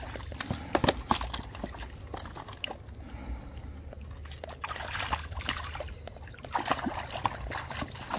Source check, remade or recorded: recorded